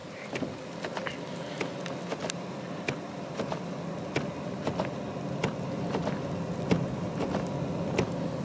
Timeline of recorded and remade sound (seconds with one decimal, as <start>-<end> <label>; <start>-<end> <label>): 0.0-8.4 recorded